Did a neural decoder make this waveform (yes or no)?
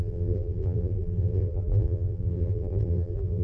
yes